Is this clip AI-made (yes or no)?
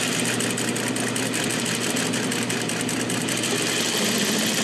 no